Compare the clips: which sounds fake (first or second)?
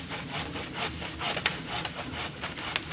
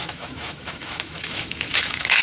second